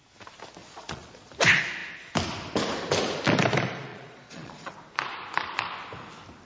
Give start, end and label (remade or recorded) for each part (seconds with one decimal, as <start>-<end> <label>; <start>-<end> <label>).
0.0-0.6 recorded; 0.6-1.3 remade; 1.3-3.9 recorded; 3.9-4.7 remade; 4.7-6.4 recorded